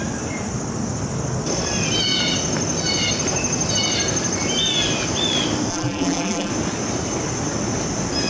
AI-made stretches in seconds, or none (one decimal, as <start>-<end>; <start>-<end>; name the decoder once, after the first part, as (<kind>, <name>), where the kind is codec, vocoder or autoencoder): 5.7-6.5 (vocoder, BigVGAN v2)